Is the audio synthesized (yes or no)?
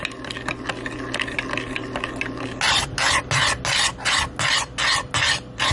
no